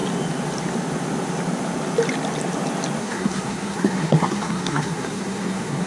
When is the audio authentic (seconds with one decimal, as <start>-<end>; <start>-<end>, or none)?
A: 0.0-3.0